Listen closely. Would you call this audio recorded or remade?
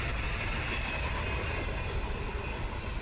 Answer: recorded